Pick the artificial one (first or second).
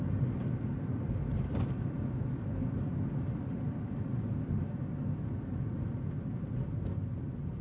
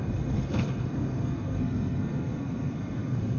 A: second